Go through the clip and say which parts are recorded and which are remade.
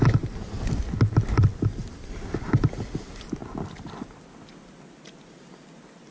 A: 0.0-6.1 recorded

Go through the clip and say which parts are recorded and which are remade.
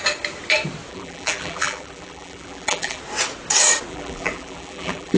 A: 0.0-0.9 recorded; 0.9-3.0 remade; 3.0-3.9 recorded; 3.9-5.2 remade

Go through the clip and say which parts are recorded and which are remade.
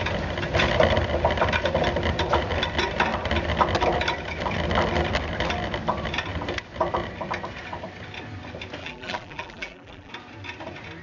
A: 0.0-8.8 recorded; 8.8-10.1 remade; 10.1-11.0 recorded